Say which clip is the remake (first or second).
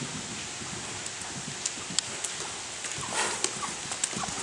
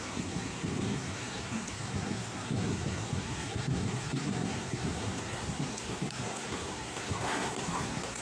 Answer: second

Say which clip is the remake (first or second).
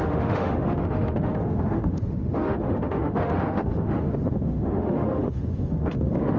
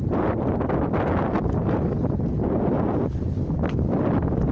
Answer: first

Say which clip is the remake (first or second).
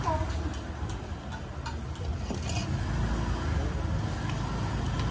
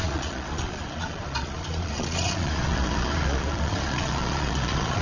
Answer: second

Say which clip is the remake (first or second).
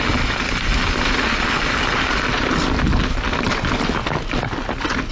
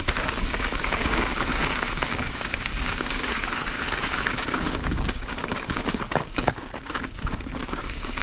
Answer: second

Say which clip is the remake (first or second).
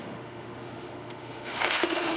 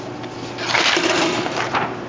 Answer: first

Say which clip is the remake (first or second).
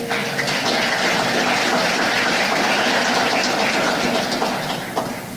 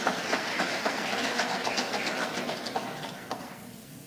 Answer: second